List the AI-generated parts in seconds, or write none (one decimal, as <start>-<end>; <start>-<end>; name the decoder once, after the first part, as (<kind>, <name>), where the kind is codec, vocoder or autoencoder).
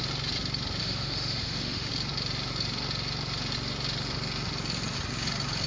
0.8-1.9 (autoencoder, DAC-VAE)